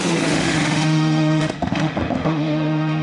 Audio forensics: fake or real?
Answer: fake